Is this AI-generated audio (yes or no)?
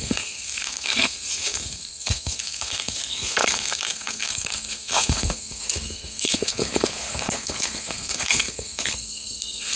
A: yes